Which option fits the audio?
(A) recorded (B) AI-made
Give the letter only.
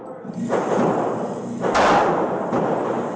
A